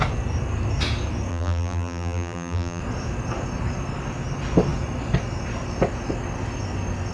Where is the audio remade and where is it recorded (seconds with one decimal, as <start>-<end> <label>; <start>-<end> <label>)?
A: 0.0-1.3 recorded; 1.3-2.8 remade; 2.8-7.1 recorded